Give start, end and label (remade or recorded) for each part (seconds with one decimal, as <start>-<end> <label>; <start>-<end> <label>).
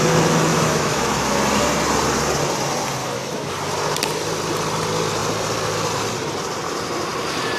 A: 0.0-0.5 recorded; 0.5-1.3 remade; 1.3-3.0 recorded; 3.0-3.5 remade; 3.5-7.6 recorded